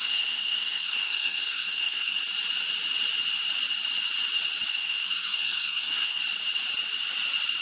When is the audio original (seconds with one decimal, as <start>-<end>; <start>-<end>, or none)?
2.2-4.7; 6.2-7.6